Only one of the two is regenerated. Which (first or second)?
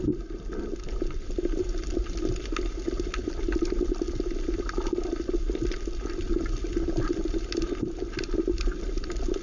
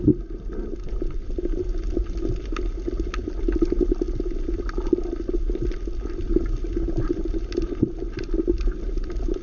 first